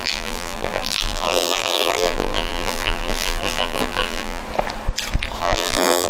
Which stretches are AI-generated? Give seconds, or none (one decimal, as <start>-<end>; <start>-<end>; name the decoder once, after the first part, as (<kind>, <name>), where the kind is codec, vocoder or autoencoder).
0.0-4.4 (vocoder, BigVGAN v2); 5.4-6.1